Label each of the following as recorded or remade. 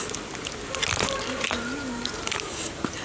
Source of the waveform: recorded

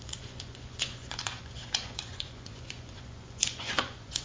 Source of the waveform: remade